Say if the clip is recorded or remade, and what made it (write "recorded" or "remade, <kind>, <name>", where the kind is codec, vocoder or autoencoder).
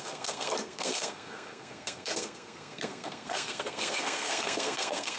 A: remade, codec, SNAC